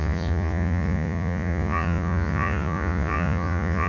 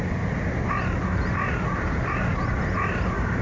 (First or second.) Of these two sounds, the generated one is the first